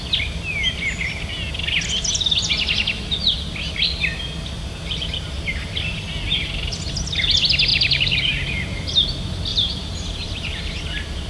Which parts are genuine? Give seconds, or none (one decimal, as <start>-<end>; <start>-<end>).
0.0-7.7; 8.2-9.5; 10.6-11.3